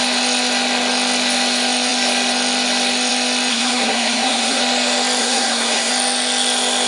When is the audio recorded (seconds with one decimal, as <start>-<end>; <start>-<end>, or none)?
0.0-3.5; 4.6-5.2; 5.9-6.9